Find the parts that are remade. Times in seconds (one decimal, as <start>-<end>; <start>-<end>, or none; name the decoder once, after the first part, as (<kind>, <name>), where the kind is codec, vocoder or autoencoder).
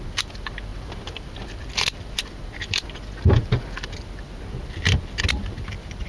none